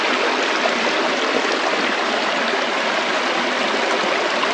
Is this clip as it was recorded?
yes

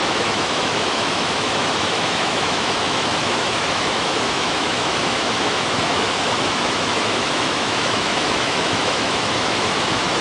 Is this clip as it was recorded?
no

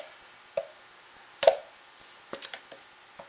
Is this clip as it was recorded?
no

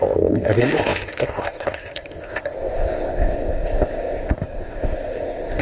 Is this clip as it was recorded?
no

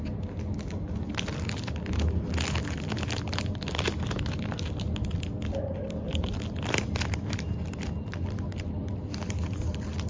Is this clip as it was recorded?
yes